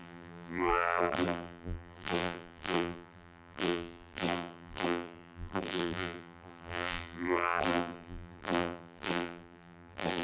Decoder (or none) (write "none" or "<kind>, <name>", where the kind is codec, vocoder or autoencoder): vocoder, BigVGAN v2